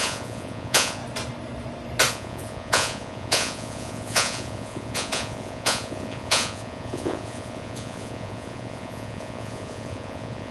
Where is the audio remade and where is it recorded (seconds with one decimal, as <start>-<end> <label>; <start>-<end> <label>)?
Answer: 0.0-1.0 remade; 1.0-2.1 recorded; 2.1-10.5 remade